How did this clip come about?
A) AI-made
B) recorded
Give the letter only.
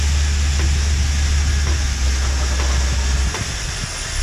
B